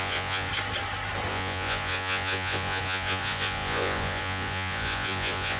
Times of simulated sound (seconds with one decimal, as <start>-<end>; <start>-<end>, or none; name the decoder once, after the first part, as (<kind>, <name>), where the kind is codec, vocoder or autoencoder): 0.0-0.5 (vocoder, Vocos); 1.3-5.6